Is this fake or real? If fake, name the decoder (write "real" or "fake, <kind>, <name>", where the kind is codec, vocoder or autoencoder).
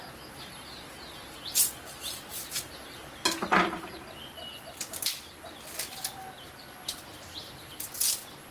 real